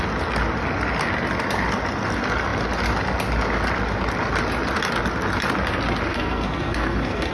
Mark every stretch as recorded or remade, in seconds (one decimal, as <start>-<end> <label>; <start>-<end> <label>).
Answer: 0.0-6.1 recorded; 6.1-7.3 remade